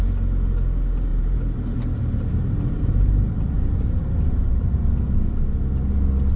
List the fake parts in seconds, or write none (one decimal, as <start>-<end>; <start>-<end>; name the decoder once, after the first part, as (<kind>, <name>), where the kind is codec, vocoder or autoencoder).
1.1-4.9 (vocoder, BigVGAN v2)